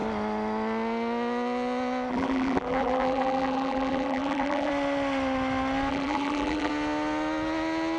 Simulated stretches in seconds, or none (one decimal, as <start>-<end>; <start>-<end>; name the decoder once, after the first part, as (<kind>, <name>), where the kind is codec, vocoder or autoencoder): 2.1-4.7 (vocoder, BigVGAN v2); 5.9-6.7